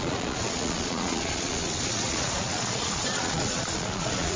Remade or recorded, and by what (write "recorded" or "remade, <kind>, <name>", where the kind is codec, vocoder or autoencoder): remade, vocoder, Vocos